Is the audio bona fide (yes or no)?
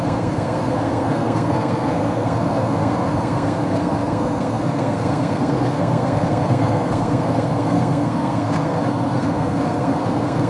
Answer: no